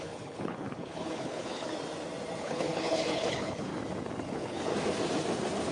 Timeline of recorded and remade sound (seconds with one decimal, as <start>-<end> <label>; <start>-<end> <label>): 0.0-1.7 remade; 1.7-2.4 recorded; 2.4-3.7 remade; 3.7-4.3 recorded; 4.3-4.7 remade; 4.7-5.7 recorded